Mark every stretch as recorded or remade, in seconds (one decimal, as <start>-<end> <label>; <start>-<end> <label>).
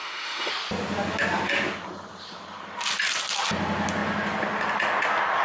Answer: 0.0-0.5 remade; 0.5-5.4 recorded